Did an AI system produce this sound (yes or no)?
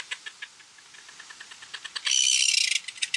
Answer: no